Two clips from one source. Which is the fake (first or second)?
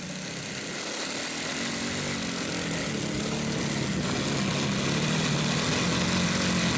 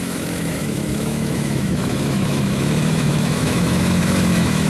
second